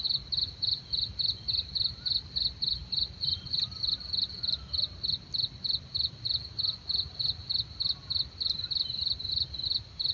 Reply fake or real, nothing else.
real